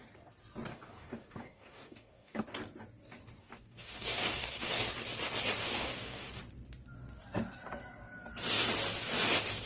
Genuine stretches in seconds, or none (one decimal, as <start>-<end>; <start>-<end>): 0.0-0.7; 2.4-3.4; 4.7-5.6; 6.4-9.7